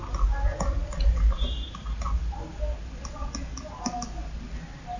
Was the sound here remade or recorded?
recorded